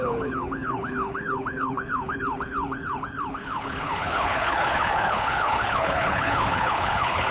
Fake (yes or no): yes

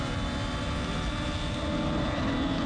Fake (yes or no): no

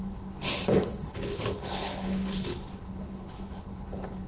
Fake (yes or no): yes